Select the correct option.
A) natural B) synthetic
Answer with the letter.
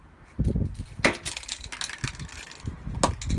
A